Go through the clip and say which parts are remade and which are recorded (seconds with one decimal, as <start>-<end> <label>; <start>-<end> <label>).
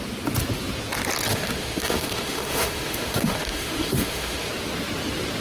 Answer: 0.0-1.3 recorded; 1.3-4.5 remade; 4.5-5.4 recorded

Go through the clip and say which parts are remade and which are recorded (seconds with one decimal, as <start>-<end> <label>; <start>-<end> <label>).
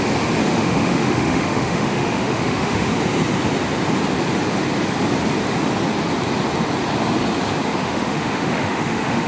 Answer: 0.0-0.4 recorded; 0.4-2.9 remade; 2.9-7.7 recorded; 7.7-9.3 remade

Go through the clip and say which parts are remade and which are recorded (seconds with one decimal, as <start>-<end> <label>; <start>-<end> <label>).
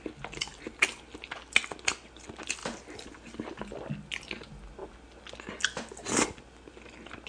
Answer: 0.0-7.3 recorded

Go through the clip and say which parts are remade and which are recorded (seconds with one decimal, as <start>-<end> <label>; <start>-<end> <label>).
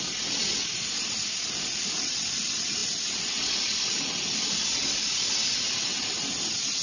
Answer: 0.0-6.8 recorded